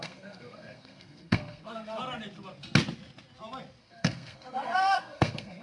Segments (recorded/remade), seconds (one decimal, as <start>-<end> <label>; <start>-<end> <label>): 0.0-2.0 remade; 2.0-3.8 recorded; 3.8-5.6 remade